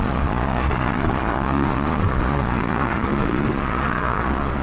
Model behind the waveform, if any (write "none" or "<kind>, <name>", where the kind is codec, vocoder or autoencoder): vocoder, Vocos